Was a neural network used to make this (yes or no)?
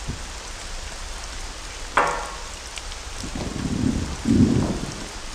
no